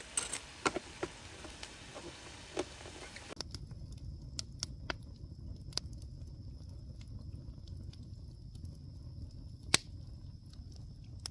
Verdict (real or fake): real